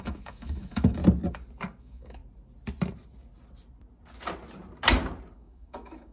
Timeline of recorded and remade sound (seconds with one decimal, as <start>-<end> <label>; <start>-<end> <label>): 0.0-1.0 remade; 1.0-1.8 recorded; 1.8-2.2 remade; 2.2-5.3 recorded; 5.3-6.1 remade

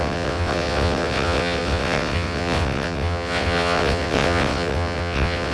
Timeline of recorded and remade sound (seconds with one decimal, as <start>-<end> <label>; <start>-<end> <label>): 0.0-5.5 remade

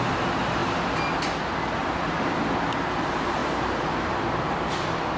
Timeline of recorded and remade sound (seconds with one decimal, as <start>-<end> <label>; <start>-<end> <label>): 0.0-3.4 recorded; 3.4-4.7 remade; 4.7-5.2 recorded

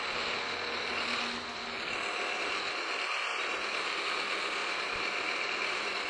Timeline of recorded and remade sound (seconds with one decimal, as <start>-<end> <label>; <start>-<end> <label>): 0.0-3.3 recorded; 3.3-4.0 remade; 4.0-4.6 recorded; 4.6-6.1 remade

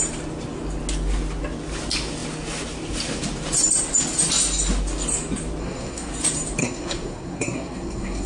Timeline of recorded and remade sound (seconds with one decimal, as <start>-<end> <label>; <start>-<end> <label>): 0.0-5.6 recorded; 5.6-6.1 remade; 6.1-6.6 recorded; 6.6-8.3 remade

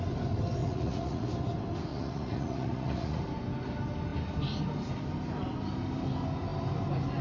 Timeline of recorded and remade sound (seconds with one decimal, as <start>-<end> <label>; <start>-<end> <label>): 0.0-0.6 recorded; 0.6-1.3 remade; 1.3-1.9 recorded; 1.9-3.2 remade; 3.2-7.2 recorded

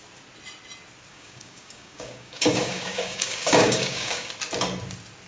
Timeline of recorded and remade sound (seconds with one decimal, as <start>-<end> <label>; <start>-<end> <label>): 0.0-1.1 recorded; 1.1-4.3 remade; 4.3-5.3 recorded

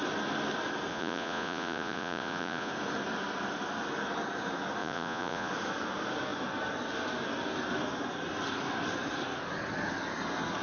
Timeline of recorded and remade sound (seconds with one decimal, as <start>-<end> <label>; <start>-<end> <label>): 0.0-0.9 recorded; 0.9-2.7 remade; 2.7-4.8 recorded; 4.8-5.5 remade; 5.5-10.6 recorded